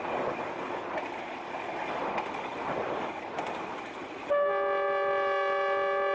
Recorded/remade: recorded